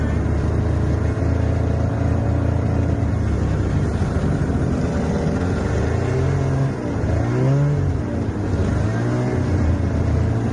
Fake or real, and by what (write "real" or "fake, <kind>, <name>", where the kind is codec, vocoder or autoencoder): real